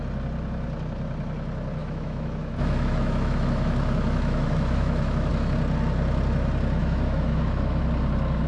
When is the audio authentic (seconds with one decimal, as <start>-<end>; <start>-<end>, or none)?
0.0-1.8; 5.3-6.8; 7.8-8.5